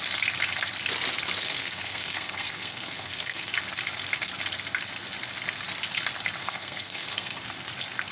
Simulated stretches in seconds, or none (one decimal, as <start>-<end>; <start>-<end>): 1.4-3.5; 6.4-7.4